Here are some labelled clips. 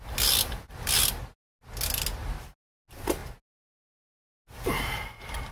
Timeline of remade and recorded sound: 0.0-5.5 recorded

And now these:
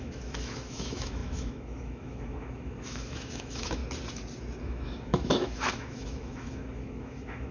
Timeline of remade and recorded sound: 0.0-3.8 remade; 3.8-4.6 recorded; 4.6-7.5 remade